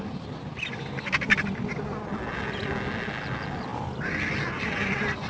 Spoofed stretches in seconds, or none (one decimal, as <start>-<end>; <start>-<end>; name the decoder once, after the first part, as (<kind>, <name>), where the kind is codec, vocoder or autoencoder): none